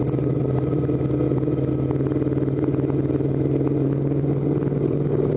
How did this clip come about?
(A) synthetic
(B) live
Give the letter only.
B